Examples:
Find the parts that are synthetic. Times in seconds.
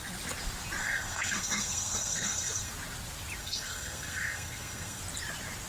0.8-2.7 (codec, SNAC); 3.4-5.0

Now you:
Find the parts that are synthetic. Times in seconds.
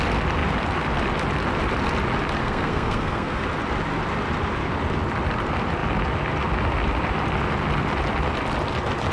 2.4-3.4 (codec, SNAC)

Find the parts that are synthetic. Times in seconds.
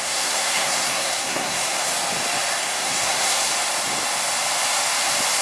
0.0-1.9 (codec, SNAC); 2.6-3.5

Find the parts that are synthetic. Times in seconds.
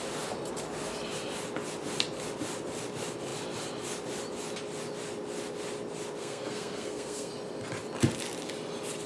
6.2-7.3 (codec, SNAC)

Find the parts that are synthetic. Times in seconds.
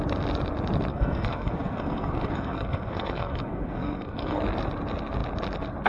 0.9-4.4 (codec, SNAC)